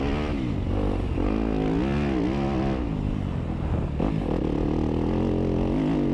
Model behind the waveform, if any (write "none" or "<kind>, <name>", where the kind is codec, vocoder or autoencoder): none